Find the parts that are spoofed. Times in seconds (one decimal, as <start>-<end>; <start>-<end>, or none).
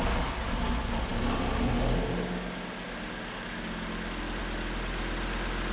none